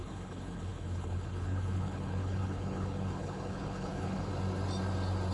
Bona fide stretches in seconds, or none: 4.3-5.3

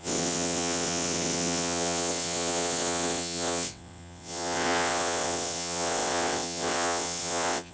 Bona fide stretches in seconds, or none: none

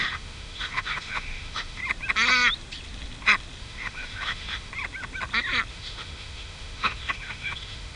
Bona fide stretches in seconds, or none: 1.8-3.6; 4.7-5.7

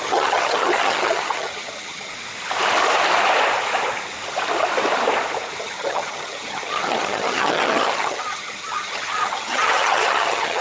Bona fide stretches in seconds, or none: 2.1-5.6

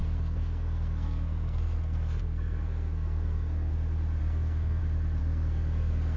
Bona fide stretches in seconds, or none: 3.7-4.2; 4.8-5.2

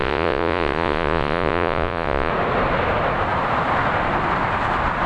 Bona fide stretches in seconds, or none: 2.3-5.1

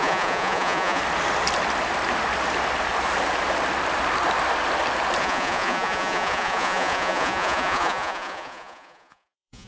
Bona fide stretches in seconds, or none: 1.0-5.2